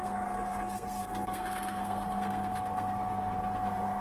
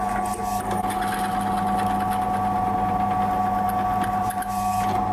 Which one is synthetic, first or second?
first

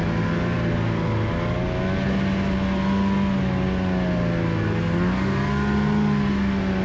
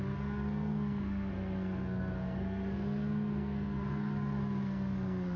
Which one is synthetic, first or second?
second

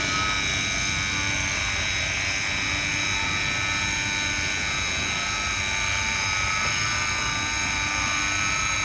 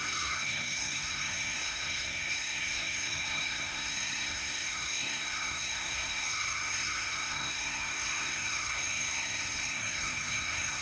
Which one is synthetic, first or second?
second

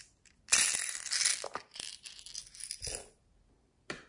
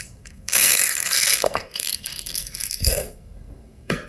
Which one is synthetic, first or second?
second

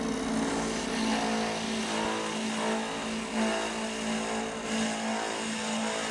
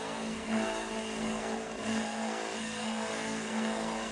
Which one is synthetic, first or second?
second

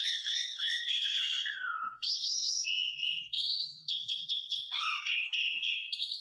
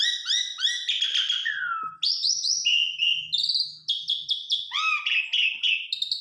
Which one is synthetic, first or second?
first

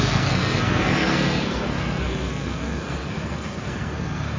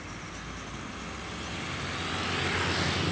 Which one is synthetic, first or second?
first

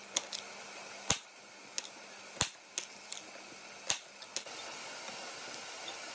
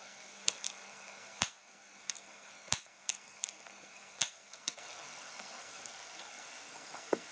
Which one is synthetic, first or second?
second